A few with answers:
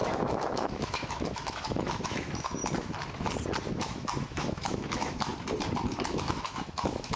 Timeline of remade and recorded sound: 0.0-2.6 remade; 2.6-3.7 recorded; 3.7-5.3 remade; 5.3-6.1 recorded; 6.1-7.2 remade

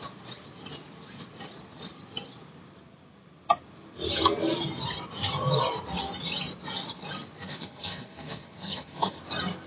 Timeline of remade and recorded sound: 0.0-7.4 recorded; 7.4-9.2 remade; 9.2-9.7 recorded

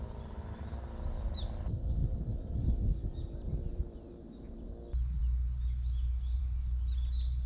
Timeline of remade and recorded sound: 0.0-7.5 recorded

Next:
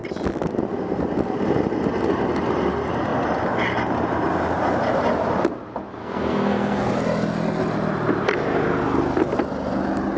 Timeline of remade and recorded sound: 0.0-6.0 recorded; 6.0-6.9 remade; 6.9-10.2 recorded

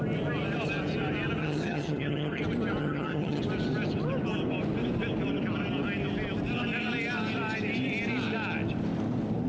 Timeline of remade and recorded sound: 0.0-1.4 recorded; 1.4-2.4 remade; 2.4-2.8 recorded; 2.8-3.4 remade; 3.4-9.5 recorded

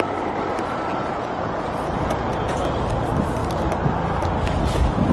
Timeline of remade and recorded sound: 0.0-1.1 recorded; 1.1-2.6 remade; 2.6-5.1 recorded